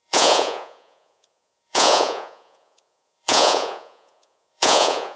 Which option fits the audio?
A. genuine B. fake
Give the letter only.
B